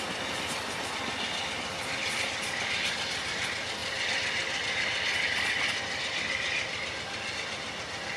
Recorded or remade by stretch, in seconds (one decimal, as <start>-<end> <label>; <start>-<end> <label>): 0.0-8.2 recorded